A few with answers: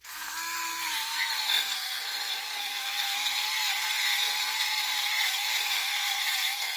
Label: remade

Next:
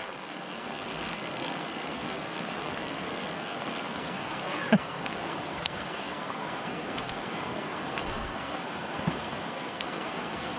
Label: remade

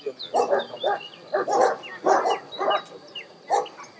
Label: recorded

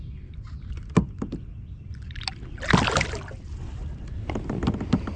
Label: recorded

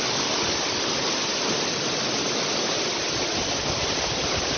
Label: recorded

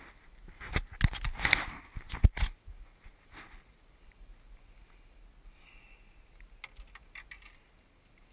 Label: recorded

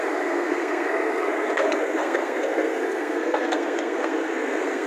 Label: remade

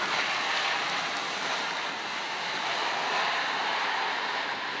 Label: recorded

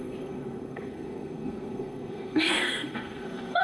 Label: remade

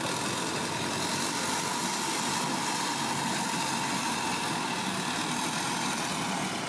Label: recorded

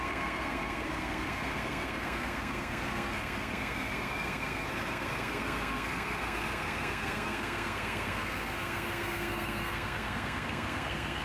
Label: remade